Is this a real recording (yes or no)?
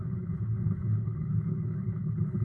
no